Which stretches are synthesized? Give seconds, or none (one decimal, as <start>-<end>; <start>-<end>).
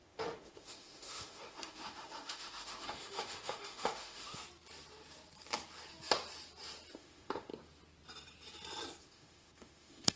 0.0-4.4; 6.9-7.5; 9.0-10.2